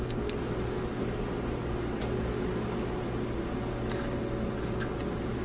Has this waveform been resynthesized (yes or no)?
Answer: no